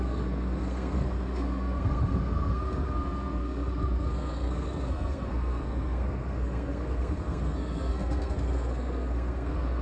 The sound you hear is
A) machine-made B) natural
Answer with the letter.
A